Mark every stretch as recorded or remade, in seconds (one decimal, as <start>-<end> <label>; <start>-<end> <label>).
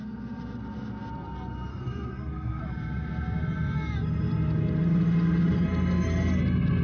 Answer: 0.0-1.7 recorded; 1.7-2.6 remade; 2.6-6.8 recorded